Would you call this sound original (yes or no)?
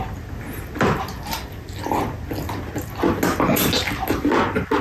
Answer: yes